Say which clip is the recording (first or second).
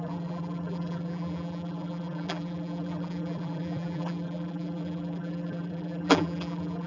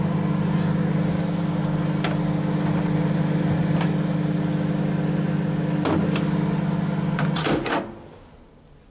second